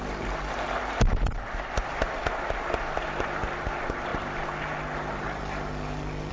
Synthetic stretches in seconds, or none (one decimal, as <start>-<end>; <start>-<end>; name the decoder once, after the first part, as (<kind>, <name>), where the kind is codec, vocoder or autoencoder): none